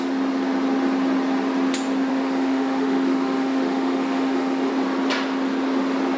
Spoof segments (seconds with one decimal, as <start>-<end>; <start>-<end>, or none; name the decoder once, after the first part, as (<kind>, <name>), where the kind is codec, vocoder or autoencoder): 2.1-4.7 (autoencoder, DAC-VAE)